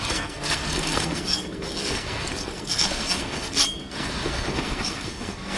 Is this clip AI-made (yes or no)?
yes